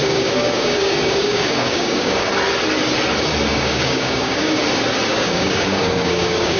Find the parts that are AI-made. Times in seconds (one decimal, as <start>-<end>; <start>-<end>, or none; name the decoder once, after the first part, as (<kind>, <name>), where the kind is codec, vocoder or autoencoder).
0.0-2.3 (codec, DAC); 3.5-4.6; 5.1-6.6